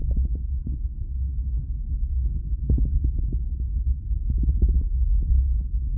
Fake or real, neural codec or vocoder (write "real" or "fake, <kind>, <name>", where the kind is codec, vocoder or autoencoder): fake, codec, HILCodec